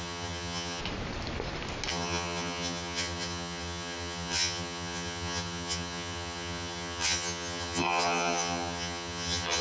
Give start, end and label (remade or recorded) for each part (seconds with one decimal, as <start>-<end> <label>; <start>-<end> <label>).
0.0-0.8 remade; 0.8-1.9 recorded; 1.9-9.6 remade